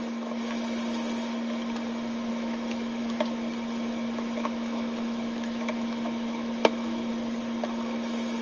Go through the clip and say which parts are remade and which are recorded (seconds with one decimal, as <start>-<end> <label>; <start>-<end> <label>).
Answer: 0.0-2.3 recorded; 2.3-3.0 remade; 3.0-3.9 recorded; 3.9-7.1 remade; 7.1-8.4 recorded